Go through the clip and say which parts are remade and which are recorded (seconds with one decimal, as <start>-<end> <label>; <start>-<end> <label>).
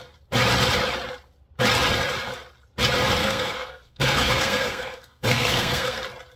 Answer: 0.0-3.2 recorded; 3.2-6.0 remade; 6.0-6.4 recorded